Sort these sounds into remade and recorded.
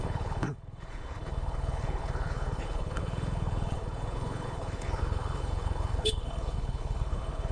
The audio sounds remade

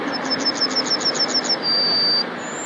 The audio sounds recorded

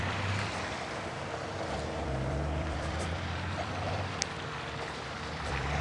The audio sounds remade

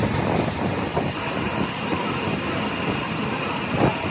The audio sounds recorded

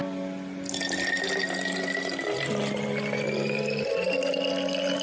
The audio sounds recorded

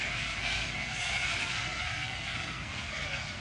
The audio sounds remade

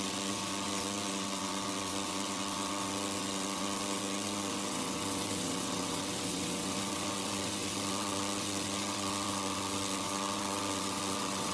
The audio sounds remade